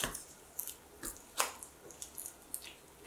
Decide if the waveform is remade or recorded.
recorded